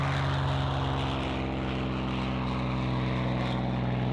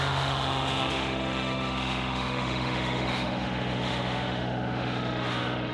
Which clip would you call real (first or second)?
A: first